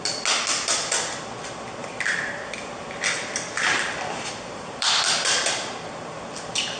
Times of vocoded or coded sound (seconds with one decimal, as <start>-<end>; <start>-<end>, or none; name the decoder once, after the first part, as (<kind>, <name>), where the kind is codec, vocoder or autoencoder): 1.8-5.7 (vocoder, BigVGAN v2)